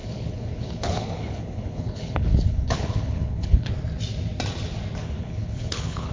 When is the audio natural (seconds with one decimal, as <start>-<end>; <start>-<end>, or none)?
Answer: 3.7-5.0